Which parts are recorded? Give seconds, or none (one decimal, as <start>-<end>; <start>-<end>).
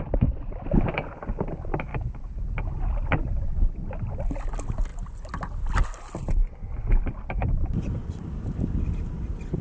0.0-9.6